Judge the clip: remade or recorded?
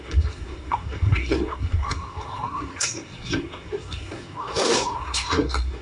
remade